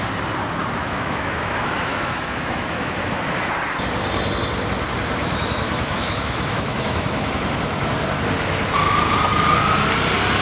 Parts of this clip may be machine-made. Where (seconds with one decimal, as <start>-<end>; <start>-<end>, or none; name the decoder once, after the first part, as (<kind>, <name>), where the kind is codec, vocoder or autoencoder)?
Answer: 0.8-3.5 (autoencoder, DAC-VAE); 5.2-7.3